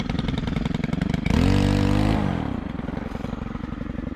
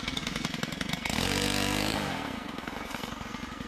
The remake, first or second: second